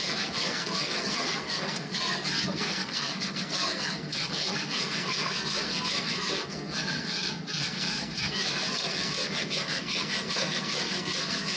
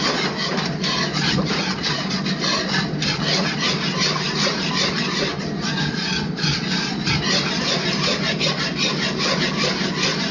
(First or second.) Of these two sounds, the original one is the second